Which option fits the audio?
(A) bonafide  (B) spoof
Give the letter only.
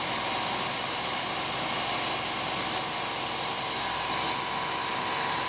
A